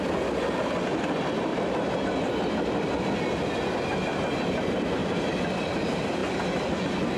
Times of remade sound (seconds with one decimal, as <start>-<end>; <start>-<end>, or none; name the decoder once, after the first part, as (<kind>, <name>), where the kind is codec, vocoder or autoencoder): 1.5-3.2 (vocoder, BigVGAN v2); 5.0-5.7